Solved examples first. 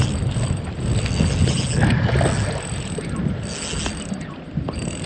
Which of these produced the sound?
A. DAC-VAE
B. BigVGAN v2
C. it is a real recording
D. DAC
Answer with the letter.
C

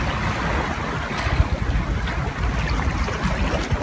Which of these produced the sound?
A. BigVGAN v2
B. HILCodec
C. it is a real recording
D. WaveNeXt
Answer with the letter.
C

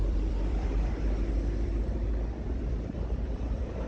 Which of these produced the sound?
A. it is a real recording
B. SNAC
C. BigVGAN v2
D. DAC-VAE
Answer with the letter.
C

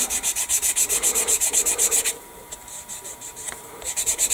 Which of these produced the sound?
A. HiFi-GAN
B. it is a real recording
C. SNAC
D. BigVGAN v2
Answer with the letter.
D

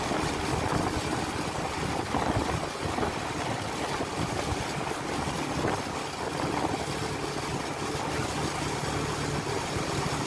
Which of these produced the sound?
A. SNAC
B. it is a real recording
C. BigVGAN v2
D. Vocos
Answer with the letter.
B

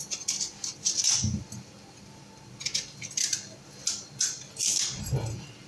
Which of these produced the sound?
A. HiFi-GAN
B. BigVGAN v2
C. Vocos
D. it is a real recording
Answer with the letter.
D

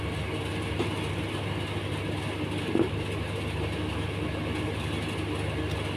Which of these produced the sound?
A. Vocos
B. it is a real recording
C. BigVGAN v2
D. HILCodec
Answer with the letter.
B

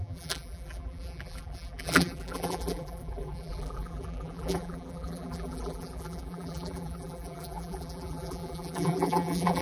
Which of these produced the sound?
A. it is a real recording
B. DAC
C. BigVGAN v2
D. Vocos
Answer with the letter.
C